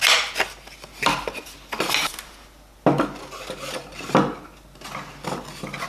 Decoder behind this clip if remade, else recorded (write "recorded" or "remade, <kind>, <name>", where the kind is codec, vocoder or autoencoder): recorded